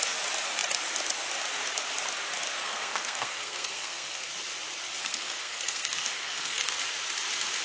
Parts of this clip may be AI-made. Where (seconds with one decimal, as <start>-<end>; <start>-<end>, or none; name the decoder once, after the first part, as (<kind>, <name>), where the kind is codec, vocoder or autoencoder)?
2.6-4.3 (codec, SNAC); 5.0-6.7